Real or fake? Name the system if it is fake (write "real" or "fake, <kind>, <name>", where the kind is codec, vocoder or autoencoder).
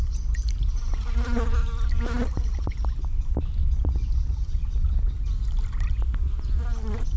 real